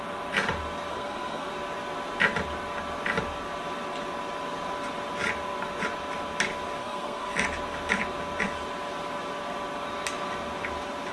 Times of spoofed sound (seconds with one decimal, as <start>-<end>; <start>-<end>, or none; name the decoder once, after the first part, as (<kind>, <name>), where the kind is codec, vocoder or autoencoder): 0.9-1.5 (codec, SNAC); 6.8-7.3